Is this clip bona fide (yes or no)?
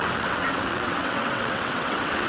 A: no